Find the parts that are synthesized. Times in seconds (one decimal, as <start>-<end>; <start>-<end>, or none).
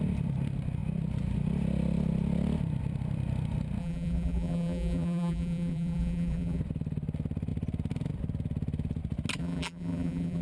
3.8-6.6; 9.4-10.4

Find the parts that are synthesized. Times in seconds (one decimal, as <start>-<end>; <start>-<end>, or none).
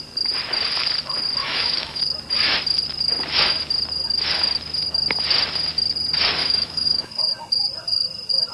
1.4-2.0; 6.4-7.2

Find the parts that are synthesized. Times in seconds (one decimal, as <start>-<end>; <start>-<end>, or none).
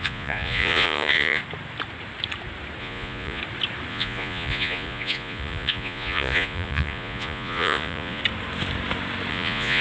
0.0-1.4; 2.8-3.4; 3.9-8.2; 9.3-9.8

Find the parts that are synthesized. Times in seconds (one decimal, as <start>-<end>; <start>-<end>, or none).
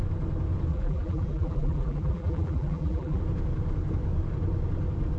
0.7-3.2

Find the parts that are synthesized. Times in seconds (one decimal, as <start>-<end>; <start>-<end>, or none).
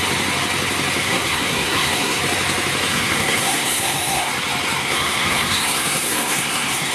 1.0-2.2; 2.9-4.3; 4.8-6.9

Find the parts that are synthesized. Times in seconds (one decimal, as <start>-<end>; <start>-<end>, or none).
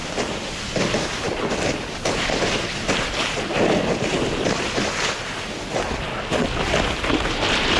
none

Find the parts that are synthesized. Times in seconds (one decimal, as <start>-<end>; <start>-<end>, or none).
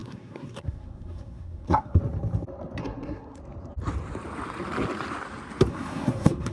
0.0-2.0; 2.8-3.4; 5.7-6.5